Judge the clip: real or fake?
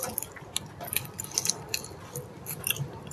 real